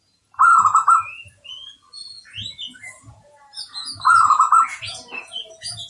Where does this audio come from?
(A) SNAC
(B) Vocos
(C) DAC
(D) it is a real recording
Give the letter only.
B